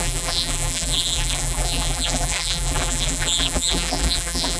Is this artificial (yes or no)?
yes